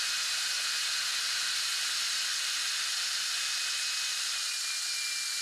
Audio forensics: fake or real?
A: fake